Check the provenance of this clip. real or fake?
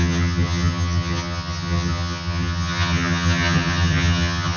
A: fake